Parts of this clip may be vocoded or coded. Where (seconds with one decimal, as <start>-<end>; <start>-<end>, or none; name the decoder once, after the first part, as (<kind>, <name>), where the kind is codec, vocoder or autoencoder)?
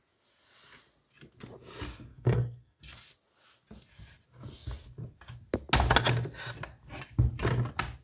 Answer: 2.1-2.8 (codec, SNAC)